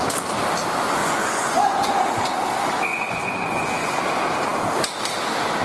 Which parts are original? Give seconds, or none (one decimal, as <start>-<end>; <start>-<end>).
0.0-1.0; 2.1-2.9; 4.0-5.6

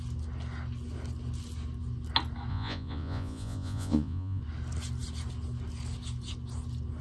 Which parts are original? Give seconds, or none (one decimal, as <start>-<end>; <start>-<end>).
0.0-2.5; 4.4-7.0

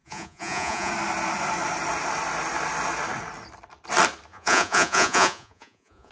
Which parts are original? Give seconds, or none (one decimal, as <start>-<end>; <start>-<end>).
0.9-4.3